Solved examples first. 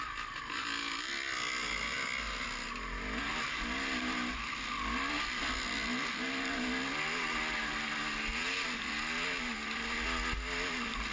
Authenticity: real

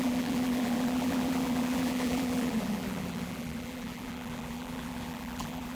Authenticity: fake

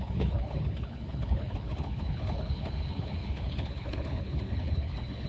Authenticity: fake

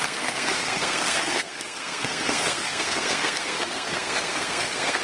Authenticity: fake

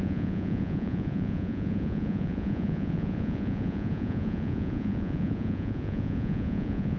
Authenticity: fake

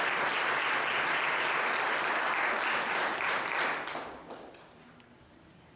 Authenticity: real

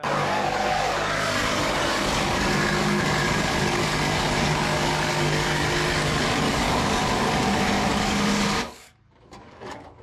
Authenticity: fake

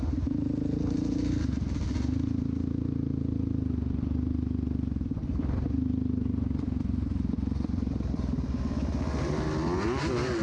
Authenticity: real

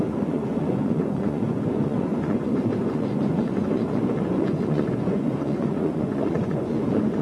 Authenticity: fake